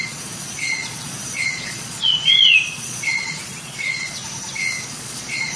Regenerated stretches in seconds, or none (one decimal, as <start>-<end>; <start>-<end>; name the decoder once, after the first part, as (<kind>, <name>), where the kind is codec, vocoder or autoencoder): 0.0-4.2 (vocoder, Vocos); 4.9-5.6